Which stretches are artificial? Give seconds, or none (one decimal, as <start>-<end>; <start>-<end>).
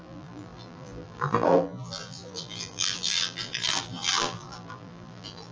0.0-5.5